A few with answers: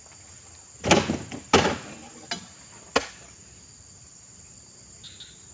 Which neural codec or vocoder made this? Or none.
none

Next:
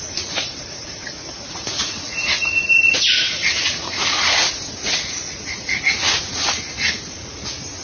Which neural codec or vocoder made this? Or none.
vocoder, Vocos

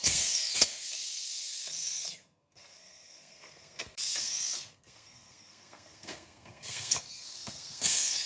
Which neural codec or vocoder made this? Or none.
codec, SNAC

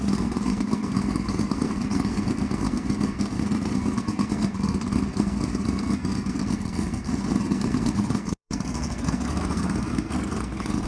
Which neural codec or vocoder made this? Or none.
codec, SNAC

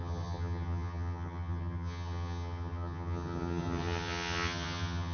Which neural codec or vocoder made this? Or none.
vocoder, HiFi-GAN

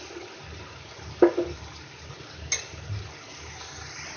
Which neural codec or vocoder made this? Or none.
none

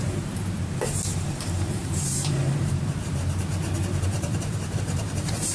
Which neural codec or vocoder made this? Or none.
vocoder, BigVGAN v2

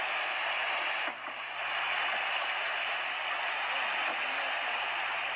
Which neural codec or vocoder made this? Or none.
none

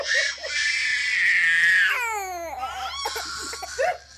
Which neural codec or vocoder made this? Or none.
none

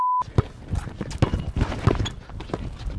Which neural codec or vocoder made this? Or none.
none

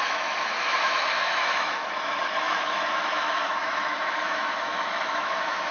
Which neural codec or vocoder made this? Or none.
autoencoder, DAC-VAE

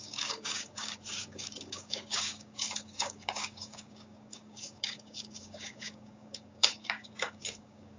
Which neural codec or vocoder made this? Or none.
codec, DAC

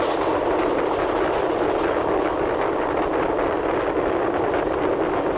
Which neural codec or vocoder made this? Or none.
none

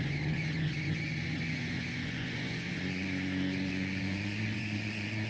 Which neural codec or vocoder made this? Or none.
vocoder, Vocos